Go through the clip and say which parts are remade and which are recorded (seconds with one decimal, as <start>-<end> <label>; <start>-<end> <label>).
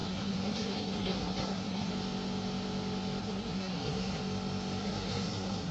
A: 0.0-1.9 remade; 1.9-3.2 recorded; 3.2-4.2 remade; 4.2-4.8 recorded; 4.8-5.7 remade